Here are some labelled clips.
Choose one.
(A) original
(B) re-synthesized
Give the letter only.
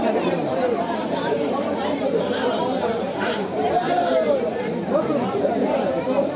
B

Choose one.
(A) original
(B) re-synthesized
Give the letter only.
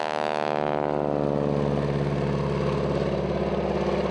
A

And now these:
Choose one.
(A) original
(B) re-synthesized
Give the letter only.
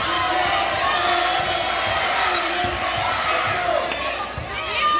A